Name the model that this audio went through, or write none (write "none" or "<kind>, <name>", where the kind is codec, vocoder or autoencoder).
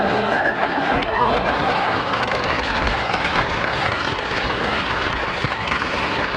codec, SNAC